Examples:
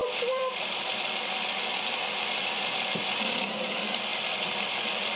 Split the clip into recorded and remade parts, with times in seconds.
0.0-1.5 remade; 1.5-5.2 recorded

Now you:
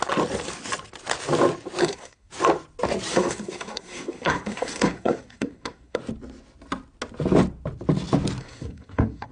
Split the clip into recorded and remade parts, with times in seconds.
0.0-1.8 recorded; 1.8-2.3 remade; 2.3-3.1 recorded; 3.1-6.0 remade; 6.0-8.4 recorded; 8.4-9.3 remade

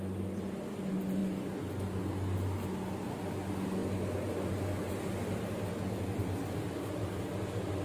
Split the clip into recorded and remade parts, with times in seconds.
0.0-7.8 recorded

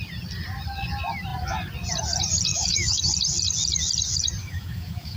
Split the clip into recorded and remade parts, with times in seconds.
0.0-2.5 recorded; 2.5-3.0 remade; 3.0-4.4 recorded; 4.4-5.2 remade